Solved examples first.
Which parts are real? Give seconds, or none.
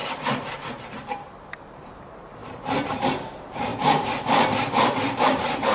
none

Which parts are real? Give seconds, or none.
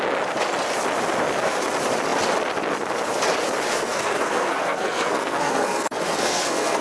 0.0-3.7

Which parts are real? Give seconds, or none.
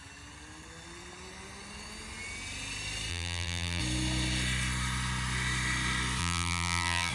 0.0-3.1; 3.8-6.2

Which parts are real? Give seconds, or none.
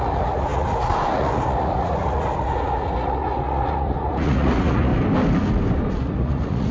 4.9-5.9